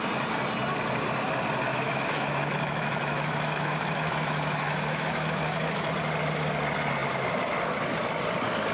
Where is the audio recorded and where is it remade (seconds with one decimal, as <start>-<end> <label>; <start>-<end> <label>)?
0.0-1.7 recorded; 1.7-5.9 remade; 5.9-8.7 recorded